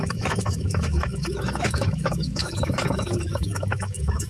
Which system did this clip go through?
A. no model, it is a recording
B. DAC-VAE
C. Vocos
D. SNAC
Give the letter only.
B